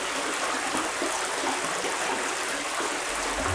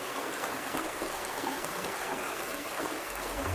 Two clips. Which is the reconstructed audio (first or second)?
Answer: second